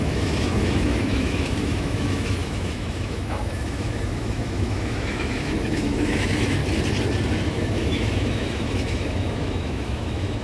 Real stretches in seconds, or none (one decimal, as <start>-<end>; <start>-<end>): 6.6-7.4